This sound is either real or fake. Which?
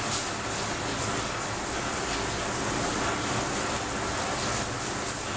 real